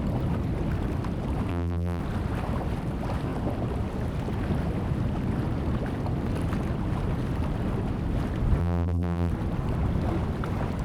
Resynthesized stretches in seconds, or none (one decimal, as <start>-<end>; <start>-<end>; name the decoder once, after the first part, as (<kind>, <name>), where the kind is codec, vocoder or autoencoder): 1.5-2.0 (vocoder, BigVGAN v2); 8.6-9.3